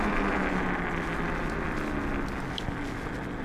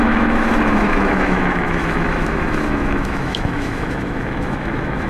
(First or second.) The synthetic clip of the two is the second